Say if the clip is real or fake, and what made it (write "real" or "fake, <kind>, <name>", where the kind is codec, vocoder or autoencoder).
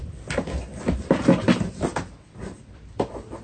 real